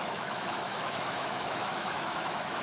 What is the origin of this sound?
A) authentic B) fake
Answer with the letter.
B